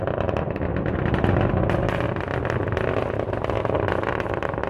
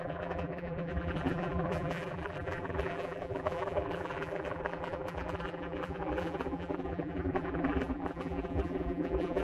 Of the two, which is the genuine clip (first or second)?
first